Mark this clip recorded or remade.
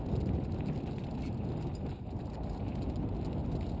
recorded